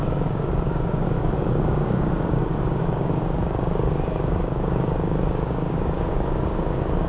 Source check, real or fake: fake